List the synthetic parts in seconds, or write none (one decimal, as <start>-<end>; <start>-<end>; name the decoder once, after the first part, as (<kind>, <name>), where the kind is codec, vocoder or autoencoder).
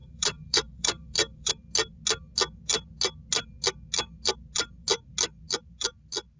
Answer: 0.0-1.5 (vocoder, BigVGAN v2)